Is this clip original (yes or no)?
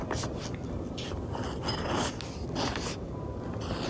yes